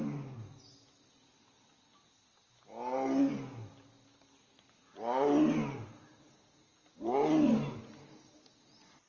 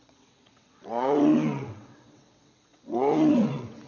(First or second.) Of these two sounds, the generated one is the second